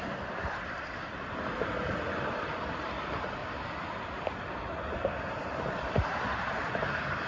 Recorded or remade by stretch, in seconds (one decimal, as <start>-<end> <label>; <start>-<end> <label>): 0.0-3.4 remade; 3.4-4.2 recorded; 4.2-7.3 remade

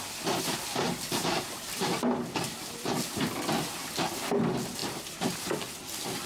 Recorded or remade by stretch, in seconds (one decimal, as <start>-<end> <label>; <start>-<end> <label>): 0.0-1.2 recorded; 1.2-3.0 remade; 3.0-4.8 recorded; 4.8-6.3 remade

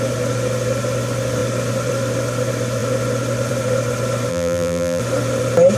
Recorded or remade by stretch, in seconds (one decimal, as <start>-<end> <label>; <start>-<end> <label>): 0.0-4.3 recorded; 4.3-5.0 remade; 5.0-5.8 recorded

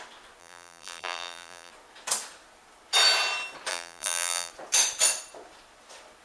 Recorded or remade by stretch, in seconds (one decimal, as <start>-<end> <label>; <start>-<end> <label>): 0.0-0.4 recorded; 0.4-1.7 remade; 1.7-3.7 recorded; 3.7-4.5 remade; 4.5-6.2 recorded

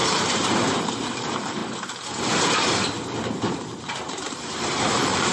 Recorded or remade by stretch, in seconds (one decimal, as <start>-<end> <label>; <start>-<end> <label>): 0.0-1.6 remade; 1.6-3.5 recorded; 3.5-5.3 remade

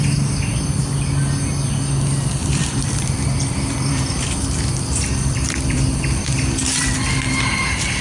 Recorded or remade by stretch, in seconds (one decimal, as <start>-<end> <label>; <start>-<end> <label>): 0.0-2.4 recorded; 2.4-6.9 remade; 6.9-8.0 recorded

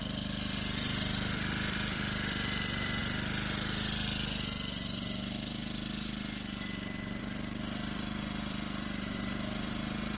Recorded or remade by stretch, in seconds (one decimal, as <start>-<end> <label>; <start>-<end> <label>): 0.0-3.0 remade; 3.0-7.2 recorded; 7.2-10.2 remade

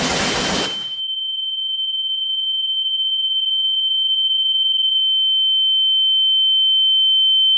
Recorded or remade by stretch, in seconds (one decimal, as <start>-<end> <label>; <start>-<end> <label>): 0.0-0.8 recorded; 0.8-5.0 remade; 5.0-7.6 recorded